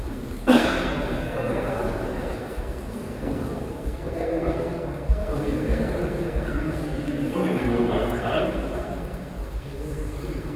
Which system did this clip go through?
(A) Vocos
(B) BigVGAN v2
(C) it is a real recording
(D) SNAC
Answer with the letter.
D